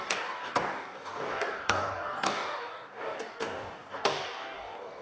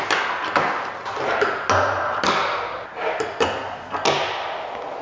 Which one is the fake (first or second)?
first